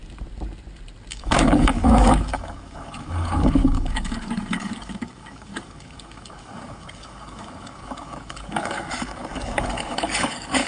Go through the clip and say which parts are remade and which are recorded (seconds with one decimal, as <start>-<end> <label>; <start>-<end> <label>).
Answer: 0.0-1.1 recorded; 1.1-10.7 remade